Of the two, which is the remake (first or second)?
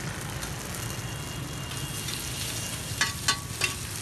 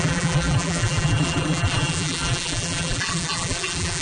second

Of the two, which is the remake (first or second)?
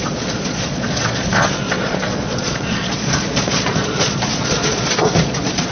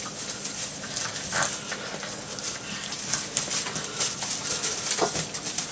first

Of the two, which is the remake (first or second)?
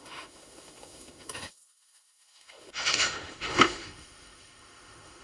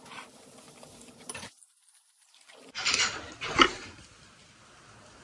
first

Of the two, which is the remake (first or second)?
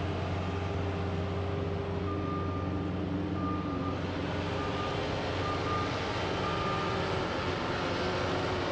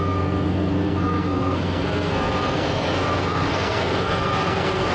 second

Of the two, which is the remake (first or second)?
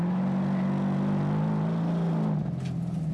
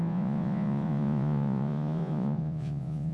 second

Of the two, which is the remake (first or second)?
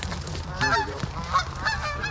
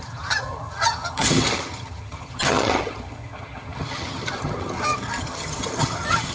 second